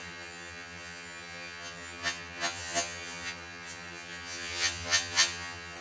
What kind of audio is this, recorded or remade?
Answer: remade